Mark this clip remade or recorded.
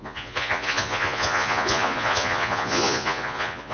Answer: remade